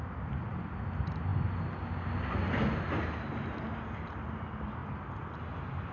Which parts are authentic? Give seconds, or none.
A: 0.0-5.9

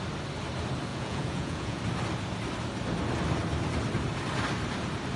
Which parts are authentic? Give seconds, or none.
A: 0.0-0.9; 1.8-5.2

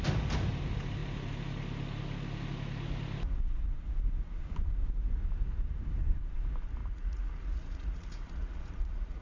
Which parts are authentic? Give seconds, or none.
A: 0.0-6.8

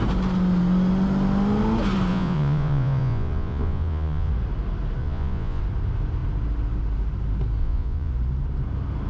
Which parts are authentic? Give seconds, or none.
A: 0.0-2.1; 4.3-5.0; 5.6-7.6; 8.1-9.1

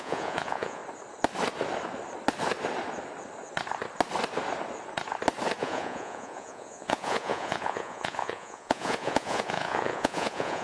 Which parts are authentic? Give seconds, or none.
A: 0.8-5.6

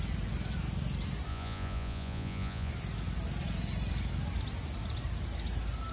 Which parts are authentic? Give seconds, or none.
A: 0.0-1.3; 2.7-5.9

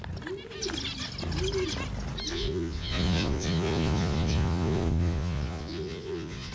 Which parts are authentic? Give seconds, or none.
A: 0.0-2.3

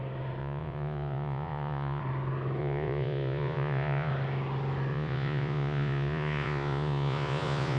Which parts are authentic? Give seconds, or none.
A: 0.0-0.4; 2.0-2.6; 4.1-4.9